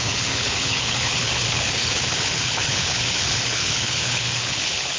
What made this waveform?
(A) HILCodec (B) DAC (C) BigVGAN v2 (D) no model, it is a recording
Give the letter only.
A